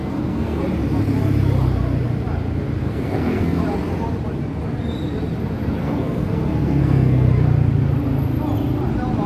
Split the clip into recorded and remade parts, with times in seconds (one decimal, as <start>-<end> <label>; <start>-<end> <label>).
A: 0.0-0.6 remade; 0.6-2.8 recorded; 2.8-3.6 remade; 3.6-5.8 recorded; 5.8-7.3 remade; 7.3-9.3 recorded